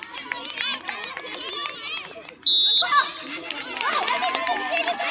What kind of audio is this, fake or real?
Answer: real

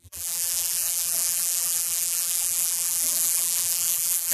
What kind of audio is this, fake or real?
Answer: fake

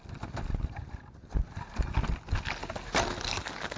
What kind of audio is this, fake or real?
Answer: real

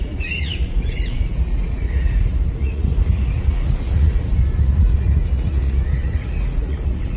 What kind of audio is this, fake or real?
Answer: fake